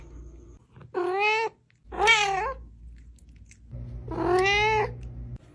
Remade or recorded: recorded